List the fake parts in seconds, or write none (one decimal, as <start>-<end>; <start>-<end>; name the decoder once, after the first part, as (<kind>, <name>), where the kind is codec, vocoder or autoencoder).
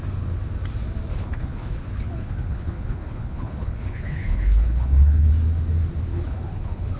1.1-5.3 (codec, HILCodec); 6.1-7.0